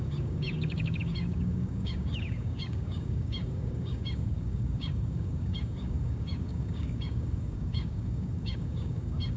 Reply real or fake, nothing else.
fake